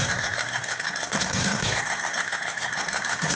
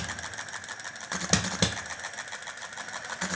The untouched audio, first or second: second